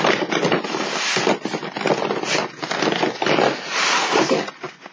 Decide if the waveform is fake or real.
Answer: real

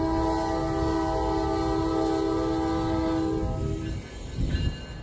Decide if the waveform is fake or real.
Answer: real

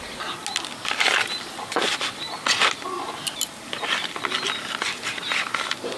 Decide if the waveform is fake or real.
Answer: real